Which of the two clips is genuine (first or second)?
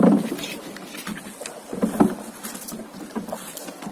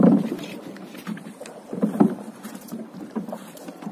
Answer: first